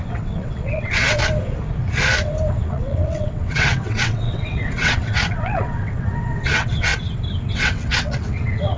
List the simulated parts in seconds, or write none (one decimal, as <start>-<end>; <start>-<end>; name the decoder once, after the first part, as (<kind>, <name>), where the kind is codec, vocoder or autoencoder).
0.0-1.2 (vocoder, WaveNeXt); 2.5-6.9; 7.5-8.8